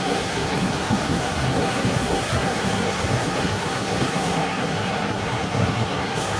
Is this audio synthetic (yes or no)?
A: yes